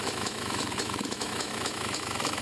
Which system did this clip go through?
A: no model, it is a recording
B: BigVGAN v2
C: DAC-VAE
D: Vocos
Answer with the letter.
C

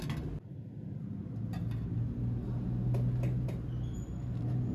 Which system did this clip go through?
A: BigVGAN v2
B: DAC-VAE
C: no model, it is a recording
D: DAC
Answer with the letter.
C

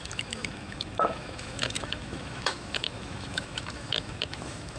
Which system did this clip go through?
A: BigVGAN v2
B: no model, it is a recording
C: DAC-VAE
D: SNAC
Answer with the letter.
C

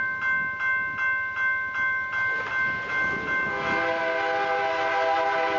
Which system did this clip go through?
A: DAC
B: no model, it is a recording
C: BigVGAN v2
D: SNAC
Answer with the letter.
B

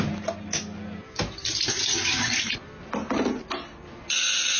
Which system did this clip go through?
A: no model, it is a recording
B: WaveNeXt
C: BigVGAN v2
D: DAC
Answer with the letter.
A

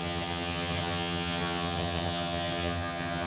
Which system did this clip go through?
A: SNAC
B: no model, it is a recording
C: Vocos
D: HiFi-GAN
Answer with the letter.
D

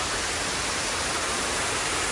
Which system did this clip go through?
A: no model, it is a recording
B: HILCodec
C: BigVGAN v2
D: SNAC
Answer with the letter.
A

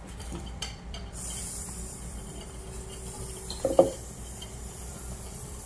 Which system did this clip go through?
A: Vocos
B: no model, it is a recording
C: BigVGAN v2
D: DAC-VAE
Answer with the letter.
C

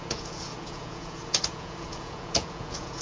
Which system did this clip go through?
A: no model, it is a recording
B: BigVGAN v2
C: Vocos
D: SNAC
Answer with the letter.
C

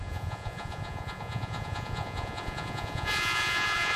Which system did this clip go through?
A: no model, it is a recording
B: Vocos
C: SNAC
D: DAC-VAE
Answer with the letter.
B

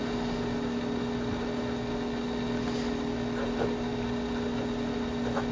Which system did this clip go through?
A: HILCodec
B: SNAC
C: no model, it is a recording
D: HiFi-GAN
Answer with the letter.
C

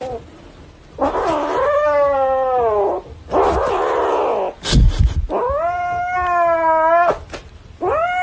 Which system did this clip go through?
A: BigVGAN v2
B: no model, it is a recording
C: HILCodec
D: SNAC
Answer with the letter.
B